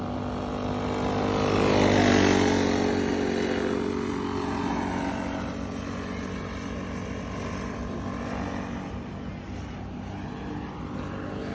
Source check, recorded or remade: recorded